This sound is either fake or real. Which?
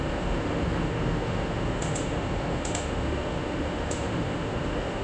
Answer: fake